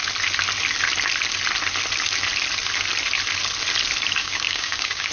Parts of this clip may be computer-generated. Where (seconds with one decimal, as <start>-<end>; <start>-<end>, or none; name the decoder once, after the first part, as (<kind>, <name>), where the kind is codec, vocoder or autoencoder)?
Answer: 4.2-5.1 (codec, DAC)